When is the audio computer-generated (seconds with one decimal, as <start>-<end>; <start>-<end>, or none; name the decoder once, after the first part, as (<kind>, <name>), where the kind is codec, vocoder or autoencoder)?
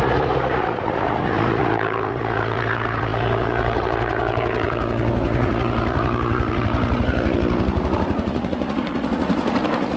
0.0-10.0 (vocoder, Vocos)